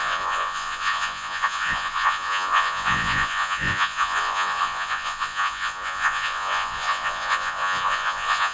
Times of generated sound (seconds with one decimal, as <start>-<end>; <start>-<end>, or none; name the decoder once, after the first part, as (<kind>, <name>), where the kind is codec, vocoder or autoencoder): 0.0-8.5 (vocoder, Vocos)